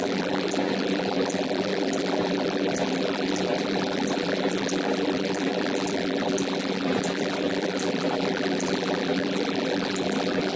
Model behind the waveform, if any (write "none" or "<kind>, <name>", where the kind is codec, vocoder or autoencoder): vocoder, BigVGAN v2